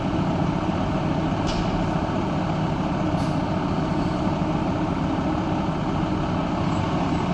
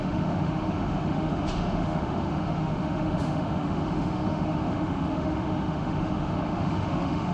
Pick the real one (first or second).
first